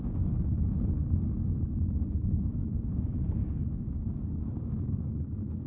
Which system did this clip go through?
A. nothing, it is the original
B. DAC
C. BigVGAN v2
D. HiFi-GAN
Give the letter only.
B